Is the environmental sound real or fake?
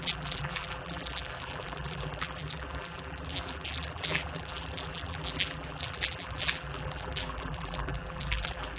fake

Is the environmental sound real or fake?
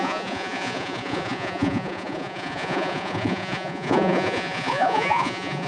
fake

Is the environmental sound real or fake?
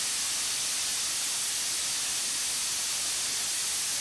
real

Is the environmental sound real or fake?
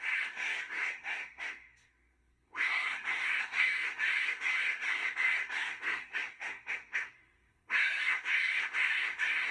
fake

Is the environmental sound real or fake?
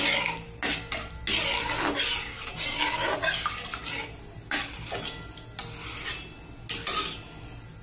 real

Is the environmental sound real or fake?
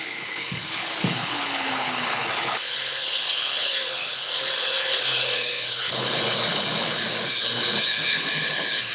fake